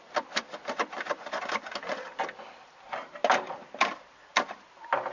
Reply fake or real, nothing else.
fake